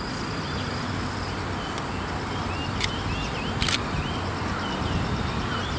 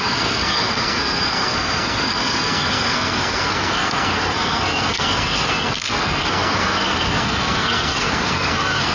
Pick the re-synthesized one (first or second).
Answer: second